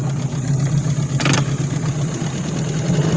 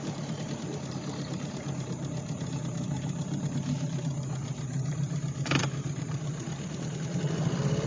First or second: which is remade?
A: second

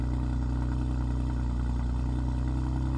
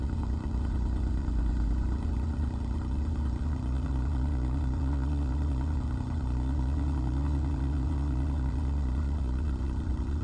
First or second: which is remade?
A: second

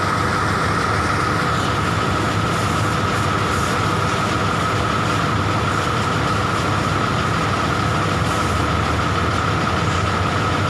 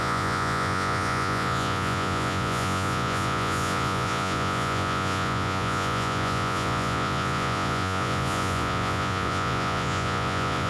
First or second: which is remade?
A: second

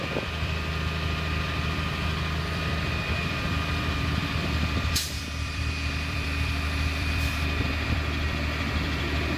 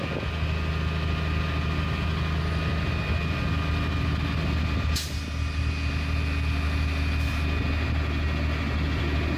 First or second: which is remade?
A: first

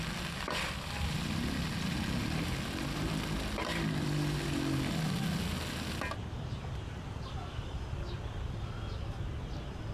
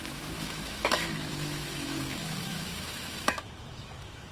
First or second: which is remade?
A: second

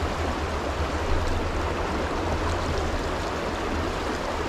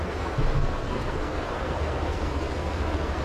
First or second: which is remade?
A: second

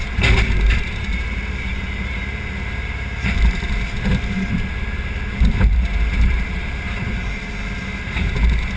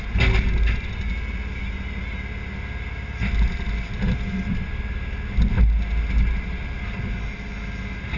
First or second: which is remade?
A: first